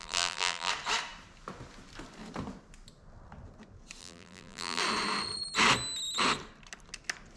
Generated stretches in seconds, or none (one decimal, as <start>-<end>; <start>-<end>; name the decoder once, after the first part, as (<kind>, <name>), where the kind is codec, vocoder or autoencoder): 0.0-0.7 (vocoder, BigVGAN v2); 4.0-4.8